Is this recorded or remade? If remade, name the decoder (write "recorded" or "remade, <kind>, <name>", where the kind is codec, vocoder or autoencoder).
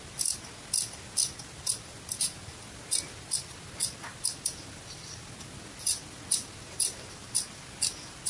recorded